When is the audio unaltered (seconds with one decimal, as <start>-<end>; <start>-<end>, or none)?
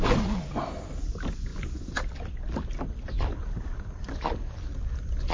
0.0-5.3